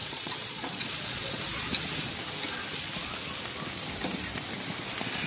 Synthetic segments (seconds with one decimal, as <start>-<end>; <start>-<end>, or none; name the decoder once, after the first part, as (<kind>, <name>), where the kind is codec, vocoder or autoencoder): 0.0-1.4 (vocoder, Vocos)